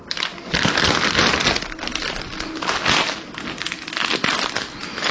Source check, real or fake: real